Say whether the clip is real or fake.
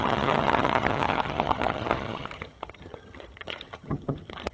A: fake